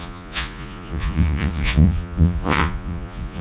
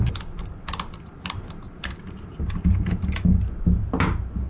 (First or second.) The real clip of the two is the second